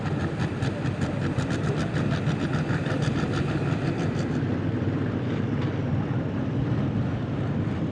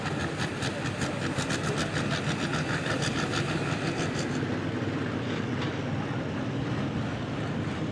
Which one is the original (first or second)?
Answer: second